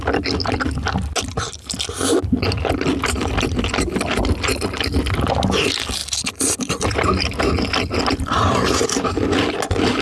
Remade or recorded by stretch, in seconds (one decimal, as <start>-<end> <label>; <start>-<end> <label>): 0.0-10.0 recorded